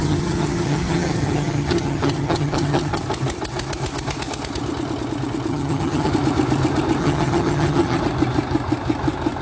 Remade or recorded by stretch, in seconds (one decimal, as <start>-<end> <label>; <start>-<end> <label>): 0.0-3.0 remade; 3.0-5.5 recorded; 5.5-6.1 remade; 6.1-7.0 recorded; 7.0-8.0 remade; 8.0-9.4 recorded

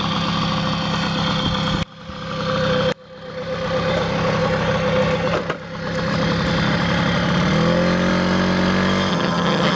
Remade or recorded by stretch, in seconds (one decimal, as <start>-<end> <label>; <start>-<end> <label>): 0.0-9.1 recorded; 9.1-9.8 remade